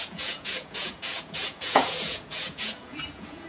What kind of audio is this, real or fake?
fake